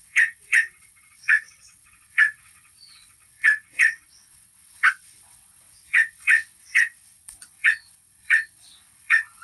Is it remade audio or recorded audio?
remade